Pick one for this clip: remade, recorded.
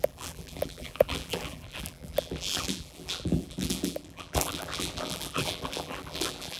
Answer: remade